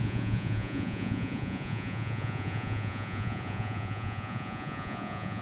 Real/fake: fake